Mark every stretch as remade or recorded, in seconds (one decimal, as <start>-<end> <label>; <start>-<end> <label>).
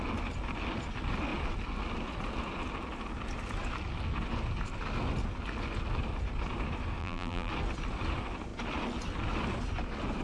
0.0-7.0 recorded; 7.0-7.5 remade; 7.5-10.2 recorded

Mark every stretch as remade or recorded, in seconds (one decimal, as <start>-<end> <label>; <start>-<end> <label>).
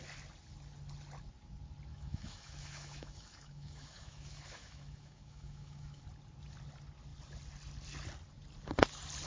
0.0-1.9 recorded; 1.9-6.0 remade; 6.0-9.3 recorded